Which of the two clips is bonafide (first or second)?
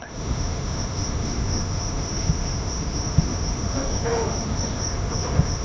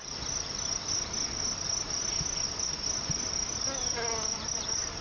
second